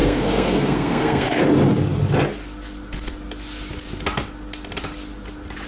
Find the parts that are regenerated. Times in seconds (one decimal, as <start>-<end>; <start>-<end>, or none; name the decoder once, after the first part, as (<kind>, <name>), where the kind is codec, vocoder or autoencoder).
0.0-1.4 (codec, SNAC)